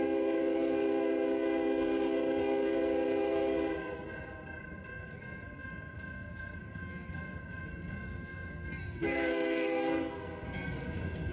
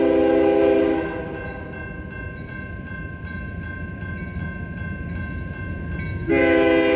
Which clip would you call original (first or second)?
second